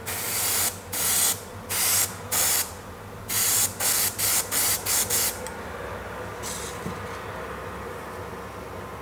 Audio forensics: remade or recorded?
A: recorded